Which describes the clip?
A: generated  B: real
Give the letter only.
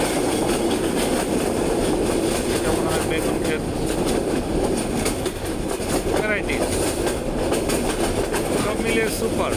B